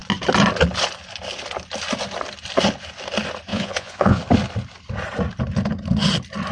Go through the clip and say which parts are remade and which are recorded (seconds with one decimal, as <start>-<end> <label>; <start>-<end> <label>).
0.0-3.5 recorded; 3.5-4.2 remade; 4.2-6.5 recorded